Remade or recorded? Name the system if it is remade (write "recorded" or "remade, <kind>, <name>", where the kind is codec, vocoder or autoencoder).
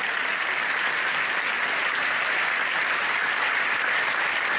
recorded